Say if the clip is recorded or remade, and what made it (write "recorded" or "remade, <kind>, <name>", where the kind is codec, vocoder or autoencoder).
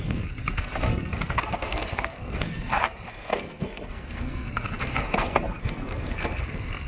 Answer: remade, codec, SNAC